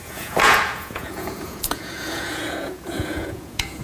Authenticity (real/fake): fake